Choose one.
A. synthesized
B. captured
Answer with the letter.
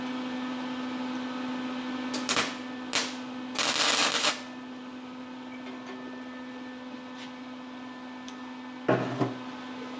B